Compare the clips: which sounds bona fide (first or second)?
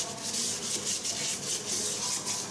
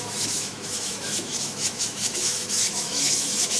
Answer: first